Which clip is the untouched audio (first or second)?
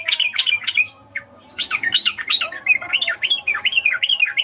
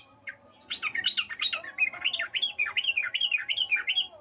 second